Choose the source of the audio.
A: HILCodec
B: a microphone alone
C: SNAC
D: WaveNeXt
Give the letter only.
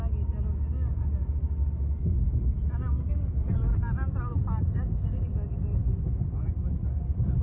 B